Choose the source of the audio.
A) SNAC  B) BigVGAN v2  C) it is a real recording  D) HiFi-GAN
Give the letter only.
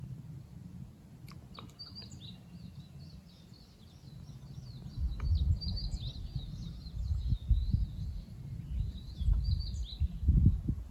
C